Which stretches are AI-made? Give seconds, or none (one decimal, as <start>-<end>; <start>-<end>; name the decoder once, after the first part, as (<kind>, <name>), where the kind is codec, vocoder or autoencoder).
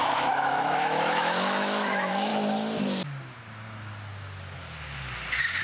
0.0-2.3 (autoencoder, DAC-VAE)